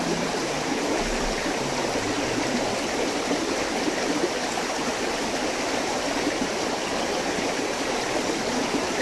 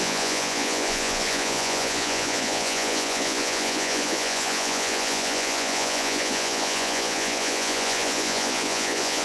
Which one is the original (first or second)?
first